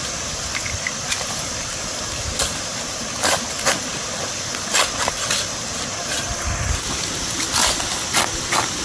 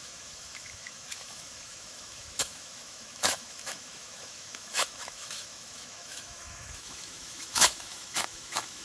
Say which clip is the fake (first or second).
second